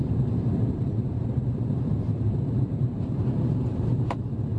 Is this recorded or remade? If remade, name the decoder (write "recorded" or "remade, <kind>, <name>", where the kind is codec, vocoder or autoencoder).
remade, vocoder, BigVGAN v2